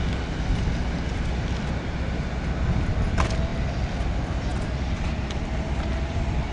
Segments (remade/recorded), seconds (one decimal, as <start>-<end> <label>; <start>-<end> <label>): 0.0-6.5 recorded